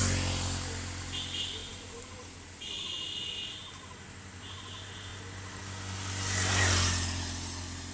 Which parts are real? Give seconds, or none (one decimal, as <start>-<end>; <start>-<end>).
0.0-7.9